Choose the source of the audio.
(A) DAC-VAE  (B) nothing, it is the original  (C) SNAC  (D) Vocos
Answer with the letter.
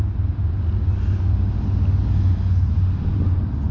B